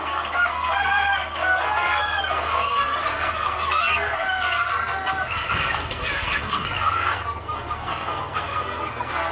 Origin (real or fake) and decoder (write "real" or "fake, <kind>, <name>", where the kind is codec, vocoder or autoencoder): fake, codec, SNAC